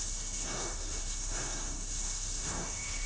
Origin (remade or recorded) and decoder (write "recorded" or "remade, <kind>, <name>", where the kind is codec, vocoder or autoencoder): remade, codec, SNAC